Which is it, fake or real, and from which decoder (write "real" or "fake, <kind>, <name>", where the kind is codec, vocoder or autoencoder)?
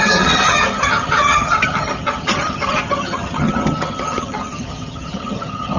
fake, vocoder, HiFi-GAN